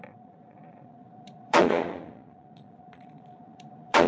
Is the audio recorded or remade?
remade